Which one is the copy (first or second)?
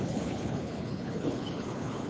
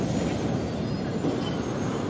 first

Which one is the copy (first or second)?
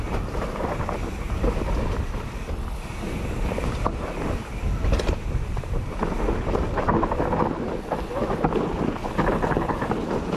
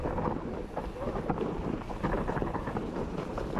second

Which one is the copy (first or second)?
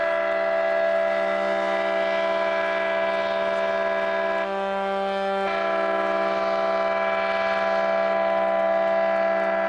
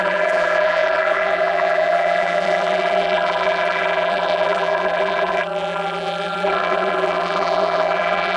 second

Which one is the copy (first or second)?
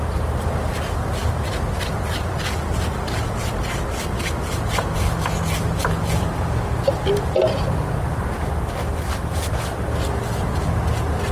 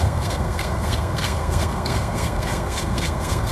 second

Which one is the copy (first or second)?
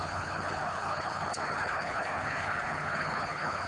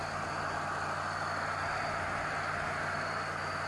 first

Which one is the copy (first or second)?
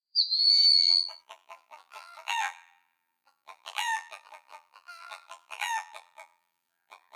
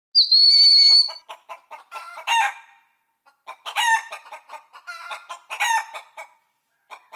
first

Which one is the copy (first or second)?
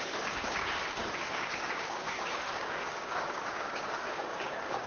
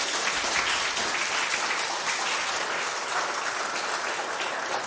first